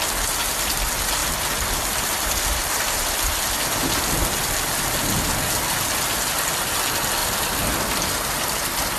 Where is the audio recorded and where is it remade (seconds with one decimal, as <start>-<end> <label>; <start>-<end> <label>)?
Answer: 0.0-1.2 recorded; 1.2-3.3 remade; 3.3-9.0 recorded